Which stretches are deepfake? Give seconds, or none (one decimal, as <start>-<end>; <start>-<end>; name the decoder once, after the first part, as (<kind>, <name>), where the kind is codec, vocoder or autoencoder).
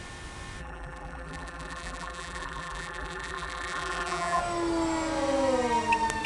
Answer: 0.6-4.4 (vocoder, BigVGAN v2)